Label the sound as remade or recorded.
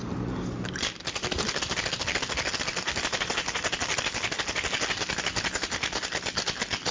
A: recorded